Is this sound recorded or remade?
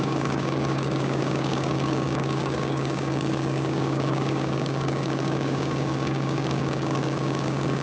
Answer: remade